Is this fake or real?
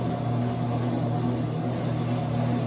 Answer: real